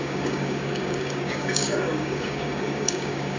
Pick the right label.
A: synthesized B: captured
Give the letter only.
A